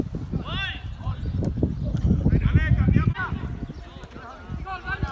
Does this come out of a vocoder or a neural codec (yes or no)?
no